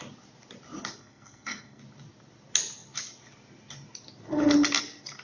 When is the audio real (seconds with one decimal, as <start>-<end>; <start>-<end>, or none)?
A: 0.0-1.0; 1.8-5.2